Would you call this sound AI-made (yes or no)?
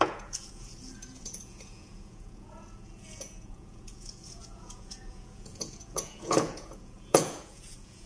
yes